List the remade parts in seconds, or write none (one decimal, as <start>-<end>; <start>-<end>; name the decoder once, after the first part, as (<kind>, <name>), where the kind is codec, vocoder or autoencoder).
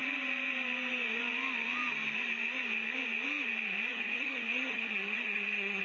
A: 3.9-5.8 (vocoder, HiFi-GAN)